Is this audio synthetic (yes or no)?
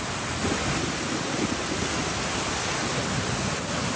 no